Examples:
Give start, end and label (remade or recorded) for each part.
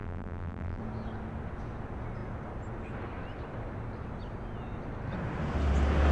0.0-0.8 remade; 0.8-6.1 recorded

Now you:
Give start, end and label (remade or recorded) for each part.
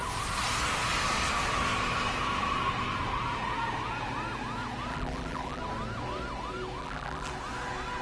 0.0-4.9 recorded; 4.9-5.6 remade; 5.6-6.8 recorded; 6.8-7.3 remade; 7.3-8.0 recorded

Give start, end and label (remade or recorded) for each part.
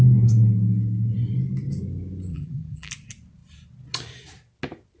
0.0-2.3 recorded; 2.3-2.9 remade; 2.9-5.0 recorded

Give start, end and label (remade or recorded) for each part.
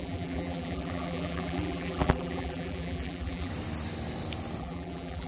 0.0-3.5 remade; 3.5-4.6 recorded; 4.6-5.3 remade